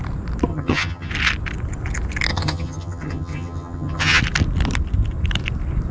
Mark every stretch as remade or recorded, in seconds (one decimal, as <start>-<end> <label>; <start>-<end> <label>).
0.0-0.5 recorded; 0.5-1.1 remade; 1.1-2.3 recorded; 2.3-4.2 remade; 4.2-5.9 recorded